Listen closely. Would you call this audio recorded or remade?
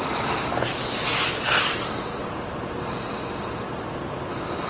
remade